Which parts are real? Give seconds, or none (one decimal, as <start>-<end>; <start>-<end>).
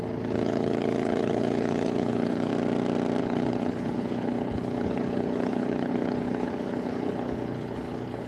2.5-3.2